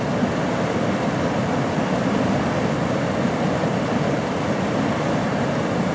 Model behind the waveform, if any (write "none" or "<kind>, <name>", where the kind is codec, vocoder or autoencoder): none